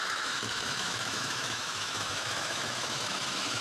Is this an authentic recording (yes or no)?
no